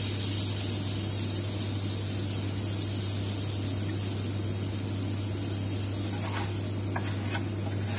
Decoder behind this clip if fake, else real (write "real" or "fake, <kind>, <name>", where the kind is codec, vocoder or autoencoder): real